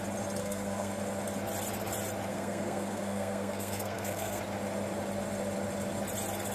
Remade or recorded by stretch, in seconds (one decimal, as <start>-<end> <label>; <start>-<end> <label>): 0.0-0.4 recorded; 0.4-0.9 remade; 0.9-2.3 recorded; 2.3-4.4 remade; 4.4-6.5 recorded

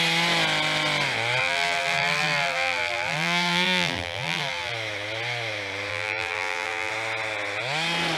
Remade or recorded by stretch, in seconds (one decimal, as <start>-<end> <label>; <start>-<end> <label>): 0.0-1.4 recorded; 1.4-4.7 remade; 4.7-5.9 recorded; 5.9-6.9 remade; 6.9-8.2 recorded

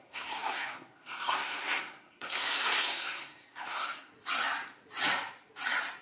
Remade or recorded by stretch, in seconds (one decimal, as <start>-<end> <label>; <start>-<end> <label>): 0.0-4.1 remade; 4.1-6.0 recorded

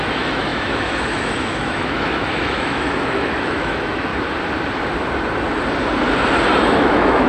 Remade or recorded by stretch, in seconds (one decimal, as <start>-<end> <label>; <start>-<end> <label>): 0.0-4.1 remade; 4.1-6.6 recorded; 6.6-7.3 remade

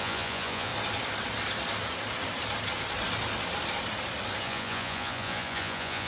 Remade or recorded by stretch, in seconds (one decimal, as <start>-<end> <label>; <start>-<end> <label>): 0.0-0.7 remade; 0.7-4.4 recorded; 4.4-6.1 remade